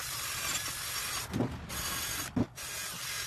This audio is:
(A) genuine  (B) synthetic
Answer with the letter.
A